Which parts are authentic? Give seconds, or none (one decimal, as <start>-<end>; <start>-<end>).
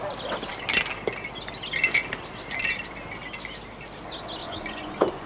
0.0-4.4